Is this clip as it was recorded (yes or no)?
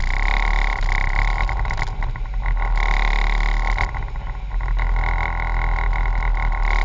yes